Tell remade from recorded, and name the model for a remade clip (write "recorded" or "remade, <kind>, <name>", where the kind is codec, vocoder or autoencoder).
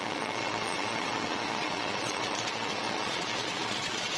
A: remade, vocoder, Vocos